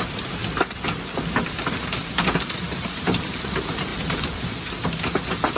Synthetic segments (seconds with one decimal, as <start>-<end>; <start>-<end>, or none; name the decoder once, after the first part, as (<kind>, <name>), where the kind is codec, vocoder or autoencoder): 0.0-0.4 (vocoder, BigVGAN v2); 2.4-3.9